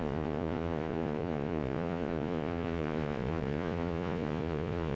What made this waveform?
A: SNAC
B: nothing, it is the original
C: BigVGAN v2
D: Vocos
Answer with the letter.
D